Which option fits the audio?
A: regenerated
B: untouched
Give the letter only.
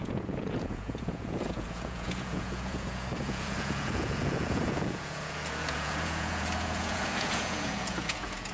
A